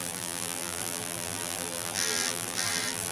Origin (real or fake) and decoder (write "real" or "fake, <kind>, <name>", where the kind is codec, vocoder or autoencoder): fake, vocoder, BigVGAN v2